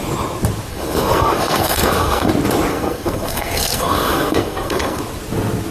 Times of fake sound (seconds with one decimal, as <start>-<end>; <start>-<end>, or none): 0.7-2.3; 2.7-5.0